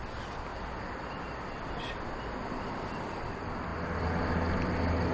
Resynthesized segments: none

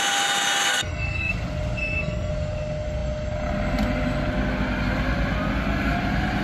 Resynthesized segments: 0.7-1.3 (codec, SNAC); 1.8-2.3

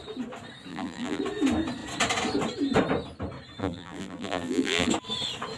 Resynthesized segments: 0.7-1.2 (vocoder, BigVGAN v2); 3.6-4.9

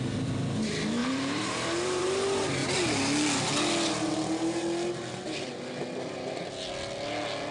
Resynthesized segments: 1.0-2.0 (vocoder, BigVGAN v2)

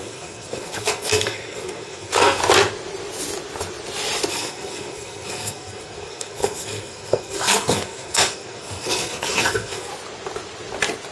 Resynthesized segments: 0.0-2.4 (codec, SNAC); 4.3-9.9

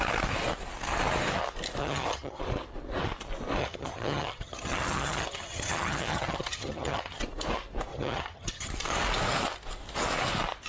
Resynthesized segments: 1.8-2.4 (vocoder, HiFi-GAN); 3.6-7.2; 7.9-8.7

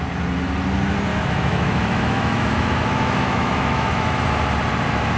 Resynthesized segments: 1.1-4.2 (autoencoder, DAC-VAE)